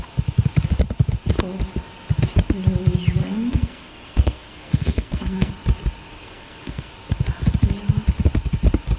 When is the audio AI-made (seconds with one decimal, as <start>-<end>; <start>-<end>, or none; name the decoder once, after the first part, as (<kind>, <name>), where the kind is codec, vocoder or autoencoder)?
3.2-5.5 (codec, SNAC); 6.1-6.9